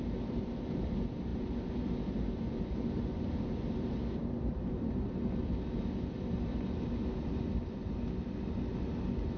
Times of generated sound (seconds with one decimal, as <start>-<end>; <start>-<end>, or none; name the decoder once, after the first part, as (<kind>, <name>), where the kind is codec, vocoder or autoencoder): 0.0-5.2 (vocoder, BigVGAN v2)